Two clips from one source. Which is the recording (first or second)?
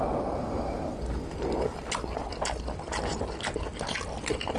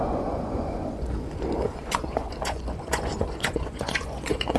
first